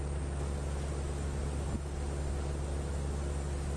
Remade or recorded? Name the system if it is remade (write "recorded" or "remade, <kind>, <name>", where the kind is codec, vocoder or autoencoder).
recorded